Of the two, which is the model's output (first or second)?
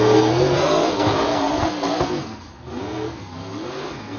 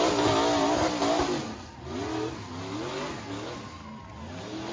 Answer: first